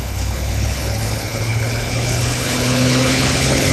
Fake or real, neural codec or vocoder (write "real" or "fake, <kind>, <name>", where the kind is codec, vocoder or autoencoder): fake, codec, HILCodec